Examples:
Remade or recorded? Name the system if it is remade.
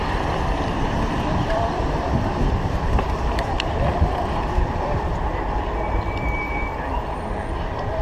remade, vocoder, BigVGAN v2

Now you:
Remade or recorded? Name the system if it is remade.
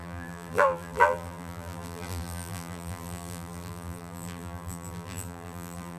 remade, vocoder, BigVGAN v2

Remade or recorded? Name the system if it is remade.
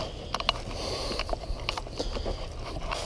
recorded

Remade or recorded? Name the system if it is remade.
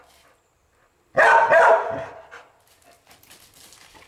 recorded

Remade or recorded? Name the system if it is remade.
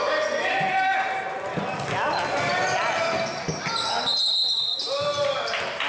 recorded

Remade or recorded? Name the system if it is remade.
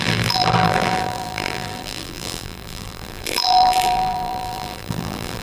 remade, vocoder, BigVGAN v2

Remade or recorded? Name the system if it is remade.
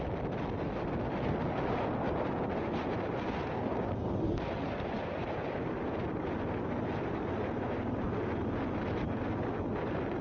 recorded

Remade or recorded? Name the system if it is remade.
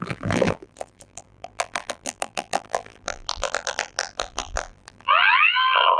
remade, vocoder, BigVGAN v2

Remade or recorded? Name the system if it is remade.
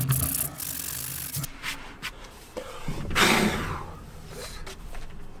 recorded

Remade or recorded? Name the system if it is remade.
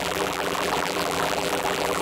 remade, vocoder, BigVGAN v2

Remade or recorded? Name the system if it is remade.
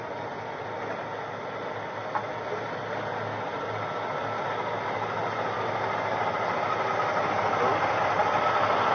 recorded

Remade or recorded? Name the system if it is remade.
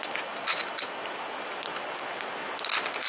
recorded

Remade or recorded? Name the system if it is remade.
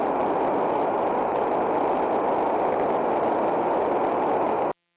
recorded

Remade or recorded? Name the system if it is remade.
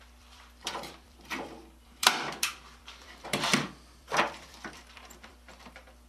remade, vocoder, BigVGAN v2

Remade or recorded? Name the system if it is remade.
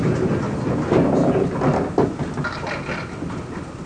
recorded